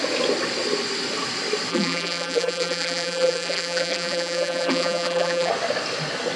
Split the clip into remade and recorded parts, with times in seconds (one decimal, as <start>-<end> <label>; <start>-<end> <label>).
0.0-1.7 recorded; 1.7-5.5 remade; 5.5-6.4 recorded